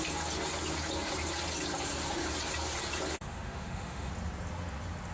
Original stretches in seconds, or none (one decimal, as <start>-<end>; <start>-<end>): 0.0-3.1; 4.1-5.1